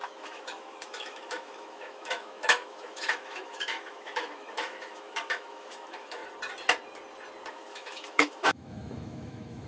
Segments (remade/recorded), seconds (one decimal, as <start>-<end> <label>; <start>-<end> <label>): 0.0-6.2 remade; 6.2-7.5 recorded; 7.5-9.7 remade